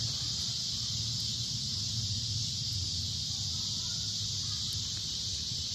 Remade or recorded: recorded